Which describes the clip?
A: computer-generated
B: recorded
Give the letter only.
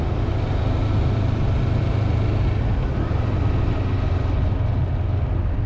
B